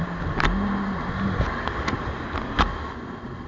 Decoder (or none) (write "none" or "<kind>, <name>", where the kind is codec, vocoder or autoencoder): none